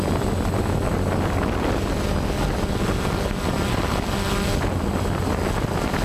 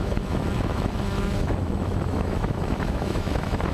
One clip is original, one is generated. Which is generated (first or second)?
second